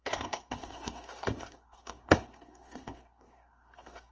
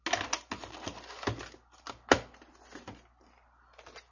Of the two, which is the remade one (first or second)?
first